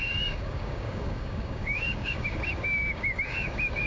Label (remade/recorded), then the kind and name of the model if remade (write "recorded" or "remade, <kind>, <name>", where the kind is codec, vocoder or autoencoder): remade, codec, DAC